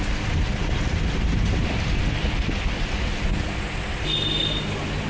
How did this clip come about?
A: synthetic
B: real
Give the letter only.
B